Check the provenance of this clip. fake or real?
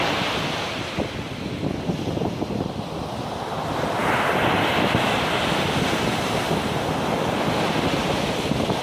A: real